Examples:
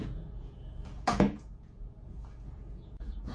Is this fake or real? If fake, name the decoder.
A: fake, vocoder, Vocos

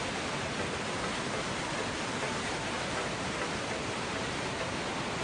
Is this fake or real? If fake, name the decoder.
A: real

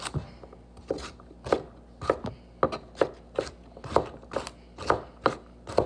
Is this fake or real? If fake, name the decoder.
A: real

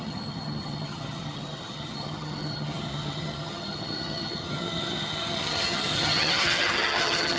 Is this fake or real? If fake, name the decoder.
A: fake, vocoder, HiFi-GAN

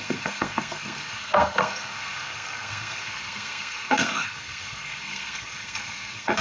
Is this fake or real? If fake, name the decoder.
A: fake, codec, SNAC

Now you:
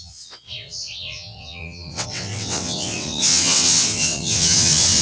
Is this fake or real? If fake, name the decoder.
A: fake, vocoder, WaveNeXt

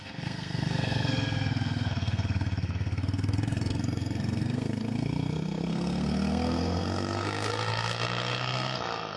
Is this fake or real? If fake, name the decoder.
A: fake, codec, SNAC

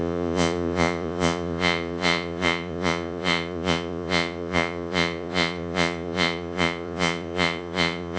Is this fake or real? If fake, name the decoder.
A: fake, vocoder, Vocos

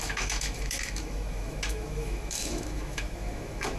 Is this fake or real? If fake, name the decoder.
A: fake, autoencoder, DAC-VAE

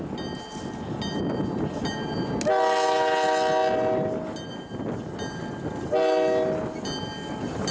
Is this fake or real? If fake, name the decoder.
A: real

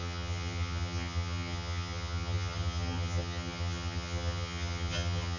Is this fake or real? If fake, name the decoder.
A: fake, vocoder, HiFi-GAN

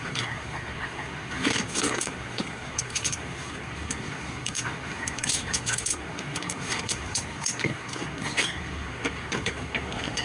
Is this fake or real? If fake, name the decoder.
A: fake, codec, SNAC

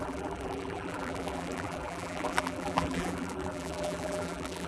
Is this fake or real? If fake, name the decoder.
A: fake, vocoder, BigVGAN v2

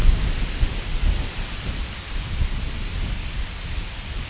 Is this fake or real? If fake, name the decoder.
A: real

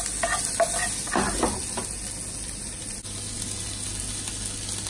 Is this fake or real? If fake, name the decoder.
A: real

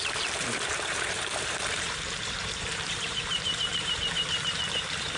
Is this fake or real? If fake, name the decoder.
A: fake, vocoder, BigVGAN v2